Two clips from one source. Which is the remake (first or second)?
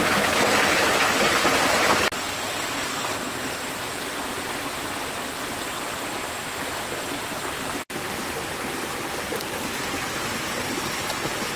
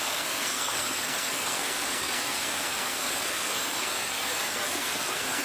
second